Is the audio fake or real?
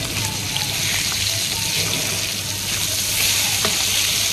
real